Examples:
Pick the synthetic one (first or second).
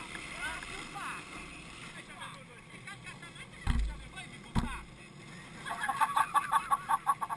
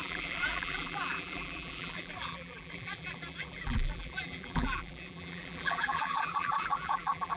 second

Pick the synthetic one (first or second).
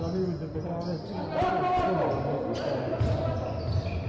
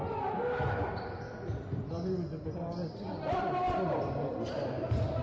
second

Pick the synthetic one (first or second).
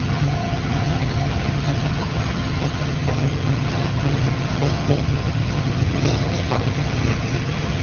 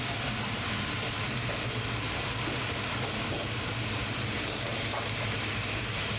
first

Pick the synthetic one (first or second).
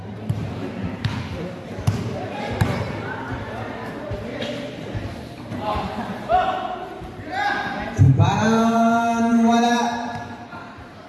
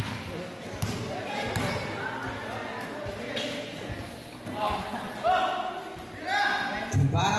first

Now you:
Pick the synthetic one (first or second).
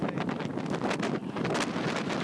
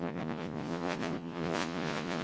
second